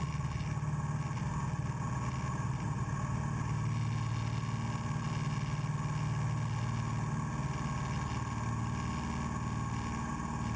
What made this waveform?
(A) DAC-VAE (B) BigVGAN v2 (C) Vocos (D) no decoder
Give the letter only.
D